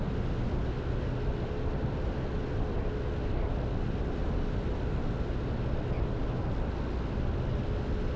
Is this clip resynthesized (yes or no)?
no